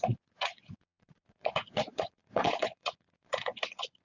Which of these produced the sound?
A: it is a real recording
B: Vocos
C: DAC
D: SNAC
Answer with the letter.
B